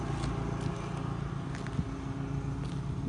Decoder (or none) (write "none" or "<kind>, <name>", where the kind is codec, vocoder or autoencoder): none